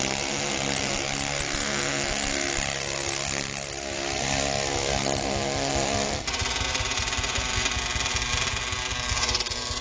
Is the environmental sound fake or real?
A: real